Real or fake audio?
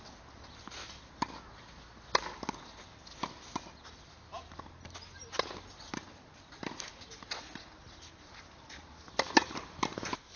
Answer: real